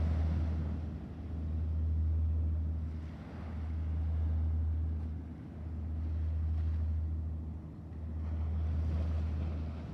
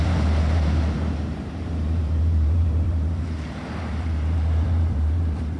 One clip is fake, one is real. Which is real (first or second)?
first